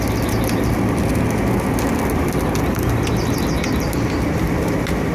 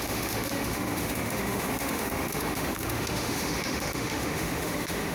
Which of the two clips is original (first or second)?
first